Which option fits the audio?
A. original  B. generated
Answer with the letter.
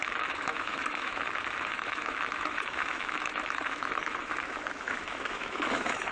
B